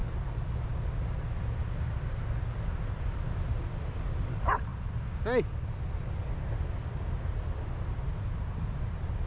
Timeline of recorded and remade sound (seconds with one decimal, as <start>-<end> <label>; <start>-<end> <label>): 0.0-3.9 recorded; 3.9-4.7 remade; 4.7-9.3 recorded